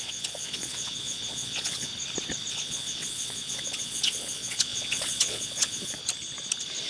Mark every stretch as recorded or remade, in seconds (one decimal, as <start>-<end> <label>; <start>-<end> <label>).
0.0-1.9 remade; 1.9-2.5 recorded; 2.5-6.0 remade; 6.0-6.9 recorded